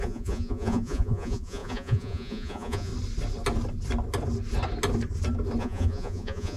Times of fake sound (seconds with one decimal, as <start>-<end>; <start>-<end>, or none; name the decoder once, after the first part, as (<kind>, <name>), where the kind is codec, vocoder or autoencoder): 0.0-2.9 (vocoder, Vocos); 5.6-6.6